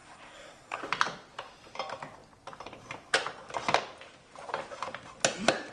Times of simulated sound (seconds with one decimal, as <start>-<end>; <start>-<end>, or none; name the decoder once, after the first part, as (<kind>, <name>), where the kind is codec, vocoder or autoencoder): 0.0-0.8 (codec, SNAC)